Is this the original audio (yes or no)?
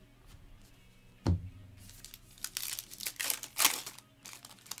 yes